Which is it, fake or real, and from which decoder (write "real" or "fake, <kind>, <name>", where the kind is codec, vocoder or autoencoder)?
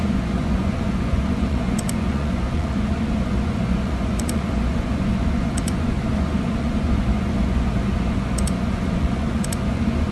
fake, vocoder, Vocos